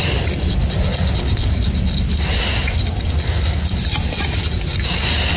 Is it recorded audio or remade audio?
recorded